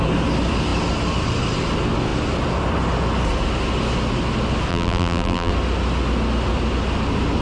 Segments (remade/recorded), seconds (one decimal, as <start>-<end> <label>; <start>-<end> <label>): 0.0-4.7 recorded; 4.7-5.5 remade; 5.5-7.4 recorded